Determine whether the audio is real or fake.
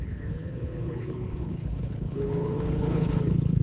fake